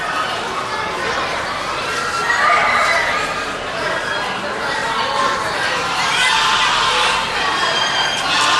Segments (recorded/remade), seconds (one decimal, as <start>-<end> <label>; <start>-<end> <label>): 0.0-8.6 recorded